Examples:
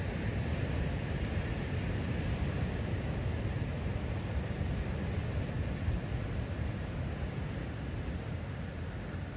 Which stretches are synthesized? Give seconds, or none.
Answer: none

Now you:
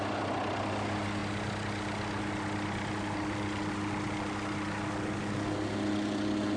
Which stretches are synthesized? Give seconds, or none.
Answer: none

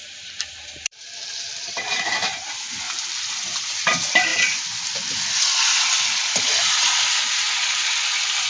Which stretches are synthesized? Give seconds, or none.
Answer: 0.0-2.5 (vocoder, BigVGAN v2)

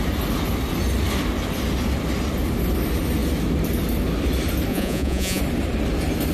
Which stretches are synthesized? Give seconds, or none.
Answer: 4.7-5.4 (vocoder, Vocos)

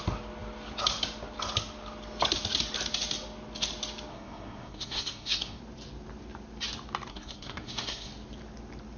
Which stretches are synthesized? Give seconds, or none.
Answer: 4.1-5.6 (codec, SNAC); 7.1-8.1

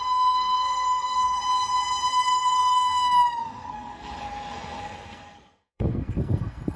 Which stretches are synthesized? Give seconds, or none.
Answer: 0.0-1.4 (codec, SNAC); 2.1-6.8

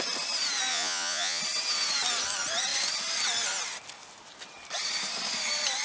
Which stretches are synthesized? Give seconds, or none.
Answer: 0.7-1.4 (vocoder, Vocos)

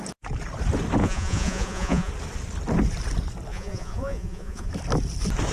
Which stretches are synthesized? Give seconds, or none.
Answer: 1.0-2.1 (vocoder, Vocos); 3.5-4.7